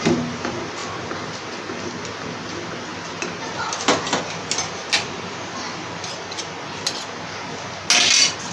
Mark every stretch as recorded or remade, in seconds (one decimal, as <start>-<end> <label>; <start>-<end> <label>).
0.0-8.5 recorded